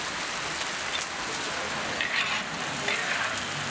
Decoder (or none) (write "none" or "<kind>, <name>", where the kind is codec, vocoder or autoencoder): none